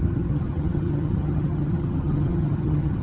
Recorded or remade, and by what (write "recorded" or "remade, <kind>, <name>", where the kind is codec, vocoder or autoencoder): remade, vocoder, HiFi-GAN